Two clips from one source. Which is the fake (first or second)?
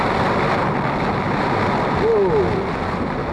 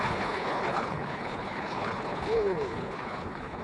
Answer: second